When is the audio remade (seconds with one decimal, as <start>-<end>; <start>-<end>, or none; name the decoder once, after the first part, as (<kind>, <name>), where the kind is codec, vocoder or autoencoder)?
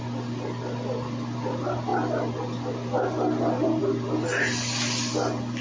none